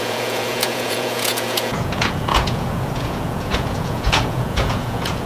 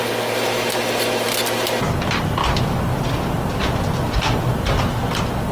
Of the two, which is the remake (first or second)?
first